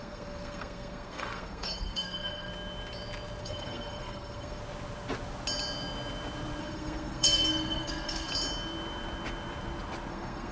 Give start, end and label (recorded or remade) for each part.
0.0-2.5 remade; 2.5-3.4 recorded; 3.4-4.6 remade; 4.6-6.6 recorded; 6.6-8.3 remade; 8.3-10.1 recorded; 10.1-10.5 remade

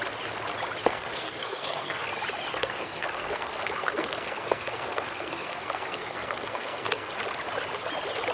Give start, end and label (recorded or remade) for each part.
0.0-0.8 recorded; 0.8-2.1 remade; 2.1-2.5 recorded; 2.5-7.1 remade; 7.1-8.3 recorded

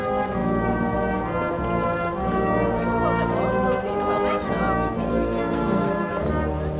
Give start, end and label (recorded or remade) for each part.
0.0-5.1 recorded; 5.1-6.1 remade; 6.1-6.8 recorded

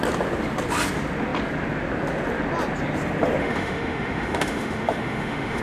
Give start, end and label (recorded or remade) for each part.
0.0-3.4 recorded; 3.4-5.6 remade

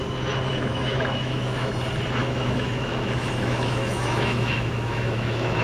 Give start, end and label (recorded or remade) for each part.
0.0-0.5 recorded; 0.5-1.7 remade; 1.7-2.2 recorded; 2.2-5.6 remade